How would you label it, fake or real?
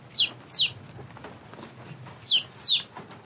real